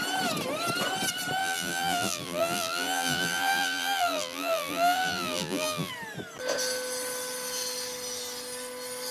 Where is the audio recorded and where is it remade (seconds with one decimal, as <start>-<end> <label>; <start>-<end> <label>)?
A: 0.0-1.4 recorded; 1.4-5.9 remade; 5.9-9.1 recorded